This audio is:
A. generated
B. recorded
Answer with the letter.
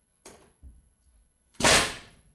A